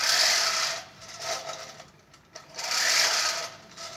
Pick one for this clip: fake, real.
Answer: real